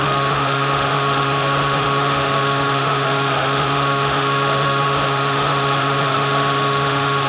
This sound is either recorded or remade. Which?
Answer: remade